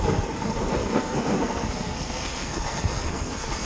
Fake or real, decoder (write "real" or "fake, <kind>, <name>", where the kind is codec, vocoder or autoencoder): fake, codec, SNAC